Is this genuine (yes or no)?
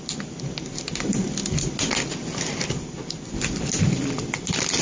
yes